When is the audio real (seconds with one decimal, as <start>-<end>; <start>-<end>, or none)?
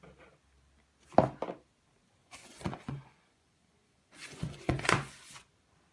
0.0-2.2; 5.3-5.9